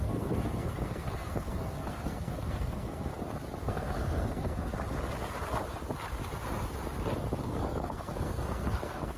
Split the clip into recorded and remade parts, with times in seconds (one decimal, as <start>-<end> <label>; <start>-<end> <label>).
0.0-3.1 remade; 3.1-3.6 recorded; 3.6-4.7 remade; 4.7-7.4 recorded; 7.4-9.2 remade